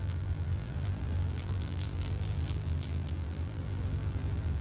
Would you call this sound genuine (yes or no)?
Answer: no